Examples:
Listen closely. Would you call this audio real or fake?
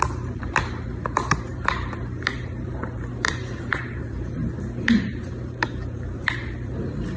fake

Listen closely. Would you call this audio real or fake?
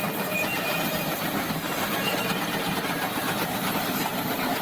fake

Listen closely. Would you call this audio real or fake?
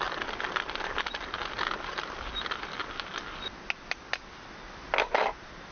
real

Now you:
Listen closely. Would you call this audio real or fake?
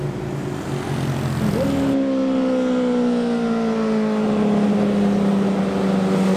real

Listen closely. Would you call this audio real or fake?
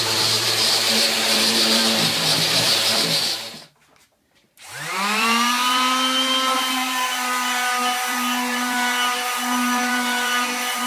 fake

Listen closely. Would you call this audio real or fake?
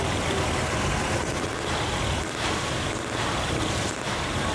real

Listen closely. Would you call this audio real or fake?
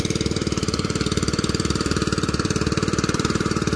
fake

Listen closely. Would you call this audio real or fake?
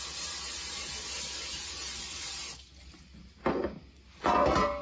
real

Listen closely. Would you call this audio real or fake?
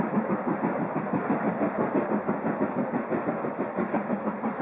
real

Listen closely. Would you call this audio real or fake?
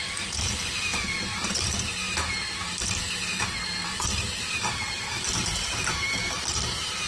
fake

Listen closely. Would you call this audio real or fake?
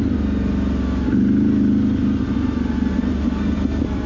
real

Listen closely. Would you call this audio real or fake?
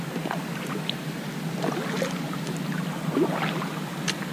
real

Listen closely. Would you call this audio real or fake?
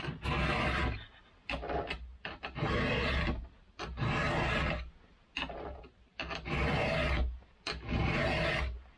real